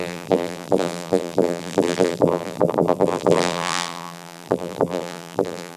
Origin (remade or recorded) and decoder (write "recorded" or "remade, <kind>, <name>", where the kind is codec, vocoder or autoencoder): remade, vocoder, BigVGAN v2